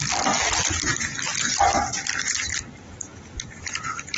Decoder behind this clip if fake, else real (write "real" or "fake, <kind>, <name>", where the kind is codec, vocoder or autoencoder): real